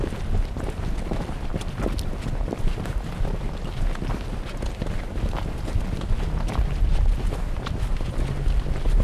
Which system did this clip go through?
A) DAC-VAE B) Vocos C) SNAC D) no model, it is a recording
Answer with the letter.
D